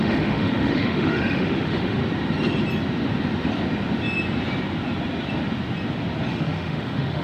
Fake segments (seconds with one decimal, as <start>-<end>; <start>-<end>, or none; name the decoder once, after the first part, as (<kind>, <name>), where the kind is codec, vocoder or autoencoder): 0.0-2.0 (autoencoder, DAC-VAE); 6.3-7.2